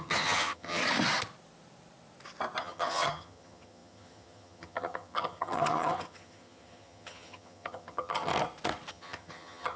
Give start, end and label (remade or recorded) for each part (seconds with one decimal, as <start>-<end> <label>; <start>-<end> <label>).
0.0-0.8 remade; 0.8-2.6 recorded; 2.6-8.3 remade; 8.3-8.9 recorded; 8.9-9.8 remade

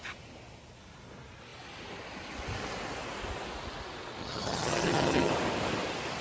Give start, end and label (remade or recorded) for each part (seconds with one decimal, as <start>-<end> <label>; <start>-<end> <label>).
0.0-4.2 recorded; 4.2-5.3 remade; 5.3-6.2 recorded

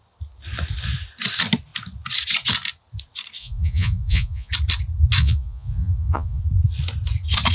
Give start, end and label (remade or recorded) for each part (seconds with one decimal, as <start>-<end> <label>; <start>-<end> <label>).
0.0-3.4 recorded; 3.4-4.5 remade; 4.5-5.2 recorded; 5.2-6.4 remade; 6.4-7.5 recorded

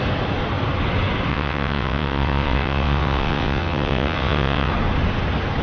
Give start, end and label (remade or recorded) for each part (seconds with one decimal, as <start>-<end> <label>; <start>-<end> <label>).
0.0-1.3 recorded; 1.3-4.7 remade; 4.7-5.6 recorded

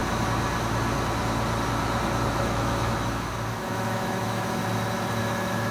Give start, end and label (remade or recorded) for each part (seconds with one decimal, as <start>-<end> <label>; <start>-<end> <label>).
0.0-2.4 recorded; 2.4-4.6 remade; 4.6-5.2 recorded; 5.2-5.7 remade